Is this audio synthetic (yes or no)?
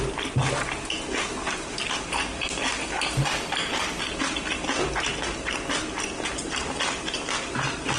no